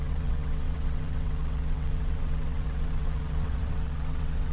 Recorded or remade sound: remade